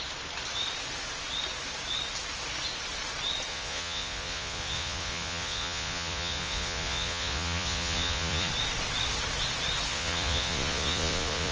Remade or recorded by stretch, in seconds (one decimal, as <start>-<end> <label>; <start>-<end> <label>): 0.0-3.5 recorded; 3.5-8.5 remade; 8.5-9.9 recorded; 9.9-11.5 remade